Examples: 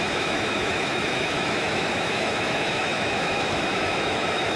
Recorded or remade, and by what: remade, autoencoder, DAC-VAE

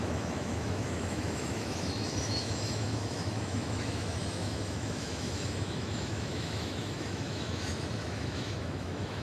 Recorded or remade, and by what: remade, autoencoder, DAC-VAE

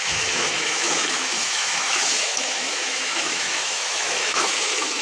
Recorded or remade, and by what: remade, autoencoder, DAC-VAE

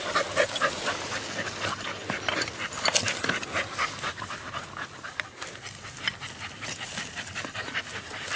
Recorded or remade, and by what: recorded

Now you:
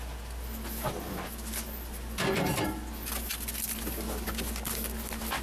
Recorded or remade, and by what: recorded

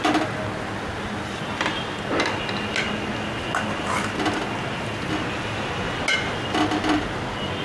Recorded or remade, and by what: recorded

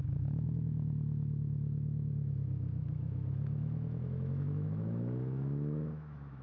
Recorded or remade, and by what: remade, autoencoder, DAC-VAE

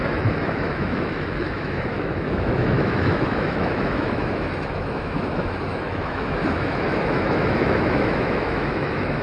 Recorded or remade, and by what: remade, autoencoder, DAC-VAE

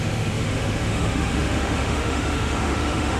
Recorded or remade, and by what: remade, autoencoder, DAC-VAE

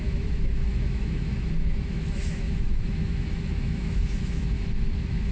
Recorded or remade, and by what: remade, autoencoder, DAC-VAE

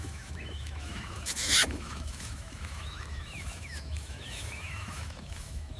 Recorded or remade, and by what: remade, autoencoder, DAC-VAE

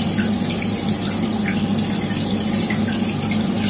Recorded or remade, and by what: recorded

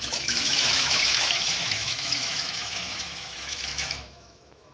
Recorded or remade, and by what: remade, autoencoder, DAC-VAE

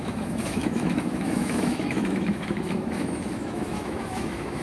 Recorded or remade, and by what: remade, autoencoder, DAC-VAE